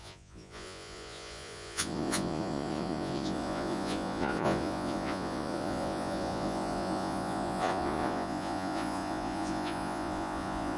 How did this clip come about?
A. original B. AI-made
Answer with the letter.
B